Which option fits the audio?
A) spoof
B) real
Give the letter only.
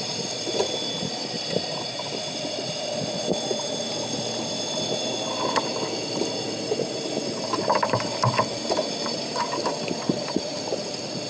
B